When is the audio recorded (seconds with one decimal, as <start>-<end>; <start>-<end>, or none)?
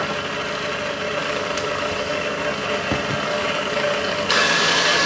0.0-1.2; 2.3-3.3